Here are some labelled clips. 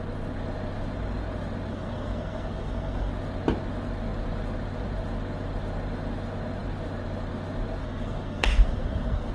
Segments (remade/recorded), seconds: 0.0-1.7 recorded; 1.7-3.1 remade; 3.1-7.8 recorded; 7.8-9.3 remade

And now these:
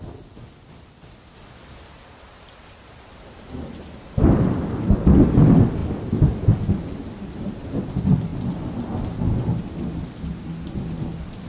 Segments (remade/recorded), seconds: 0.0-1.6 recorded; 1.6-4.5 remade; 4.5-11.5 recorded